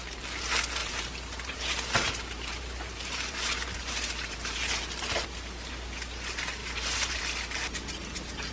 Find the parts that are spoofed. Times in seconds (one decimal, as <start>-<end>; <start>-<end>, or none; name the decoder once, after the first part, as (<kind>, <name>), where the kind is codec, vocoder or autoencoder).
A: 0.8-4.8 (vocoder, BigVGAN v2); 6.6-7.2